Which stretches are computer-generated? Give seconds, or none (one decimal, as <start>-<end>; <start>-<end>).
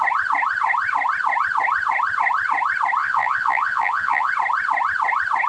3.0-4.3